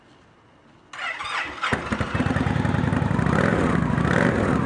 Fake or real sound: real